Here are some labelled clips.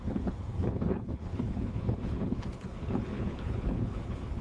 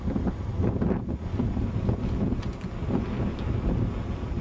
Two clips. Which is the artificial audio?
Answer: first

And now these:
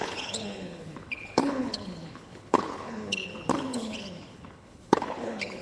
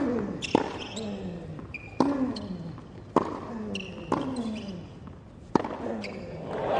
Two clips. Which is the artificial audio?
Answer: first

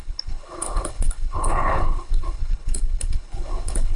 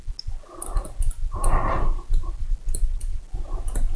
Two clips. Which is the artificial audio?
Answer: first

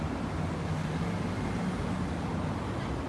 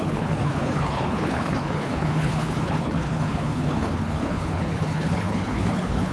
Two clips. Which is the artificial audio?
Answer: second